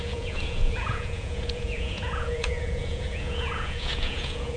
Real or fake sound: fake